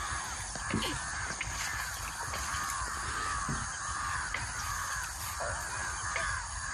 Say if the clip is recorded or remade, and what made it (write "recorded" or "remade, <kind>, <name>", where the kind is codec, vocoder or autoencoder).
recorded